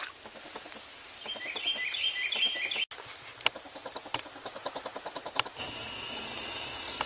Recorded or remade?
recorded